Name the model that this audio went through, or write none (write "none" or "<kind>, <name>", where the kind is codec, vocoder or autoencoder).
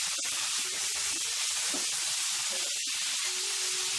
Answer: none